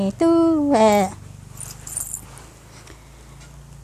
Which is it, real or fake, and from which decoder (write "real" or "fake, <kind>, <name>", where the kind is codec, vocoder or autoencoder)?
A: real